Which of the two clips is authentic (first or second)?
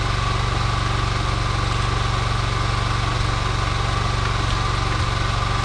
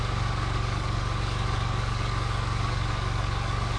first